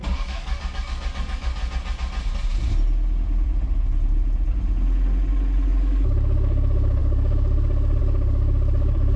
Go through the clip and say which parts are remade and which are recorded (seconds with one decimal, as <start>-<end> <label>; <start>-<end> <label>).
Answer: 0.0-1.6 remade; 1.6-5.7 recorded; 5.7-9.2 remade